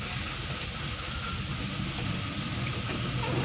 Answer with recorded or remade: recorded